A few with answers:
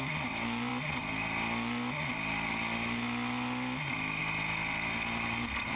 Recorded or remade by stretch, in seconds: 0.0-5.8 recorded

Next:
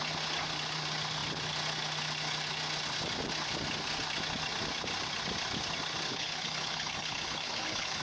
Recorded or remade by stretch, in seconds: 0.0-6.1 recorded; 6.1-8.0 remade

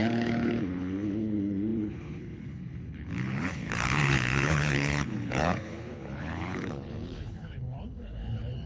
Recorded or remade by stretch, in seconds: 0.0-8.7 remade